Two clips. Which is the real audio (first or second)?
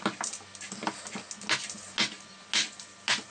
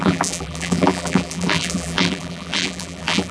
first